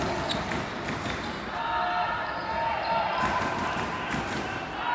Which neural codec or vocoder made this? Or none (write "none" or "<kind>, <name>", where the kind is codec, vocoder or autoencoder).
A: none